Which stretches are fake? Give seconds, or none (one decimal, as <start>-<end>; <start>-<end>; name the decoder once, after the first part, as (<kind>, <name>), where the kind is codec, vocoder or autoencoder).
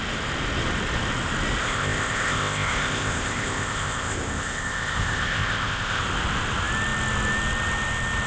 1.6-6.0 (codec, ZipCodec)